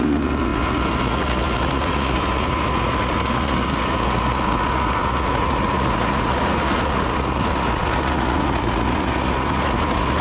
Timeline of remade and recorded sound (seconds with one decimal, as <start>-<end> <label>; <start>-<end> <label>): 0.0-10.2 remade